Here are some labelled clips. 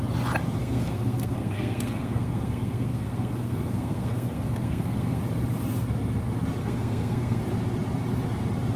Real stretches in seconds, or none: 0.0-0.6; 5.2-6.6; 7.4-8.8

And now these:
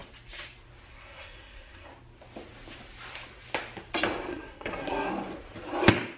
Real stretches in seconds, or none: 0.0-0.9; 1.9-4.3; 5.1-6.2

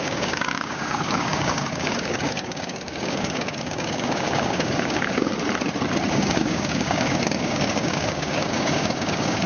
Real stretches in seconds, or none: 5.3-6.1